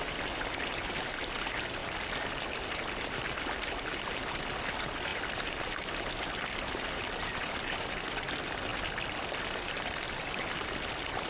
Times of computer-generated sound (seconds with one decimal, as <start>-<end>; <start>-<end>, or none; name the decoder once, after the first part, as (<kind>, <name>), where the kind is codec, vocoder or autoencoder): 0.0-1.8 (vocoder, BigVGAN v2); 2.7-8.7; 9.6-11.3